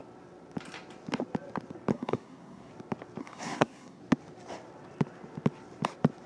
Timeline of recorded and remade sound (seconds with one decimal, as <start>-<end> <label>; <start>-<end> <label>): 0.0-1.9 recorded; 1.9-2.7 remade; 2.7-3.2 recorded; 3.2-4.0 remade; 4.0-6.3 recorded